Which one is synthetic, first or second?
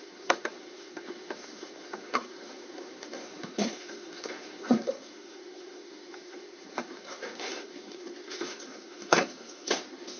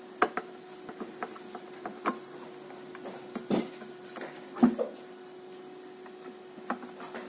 first